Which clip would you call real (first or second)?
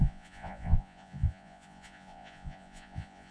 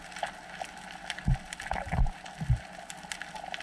second